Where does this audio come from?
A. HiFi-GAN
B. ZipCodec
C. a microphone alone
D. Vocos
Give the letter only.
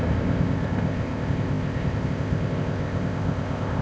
B